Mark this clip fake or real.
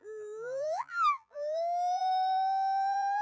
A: fake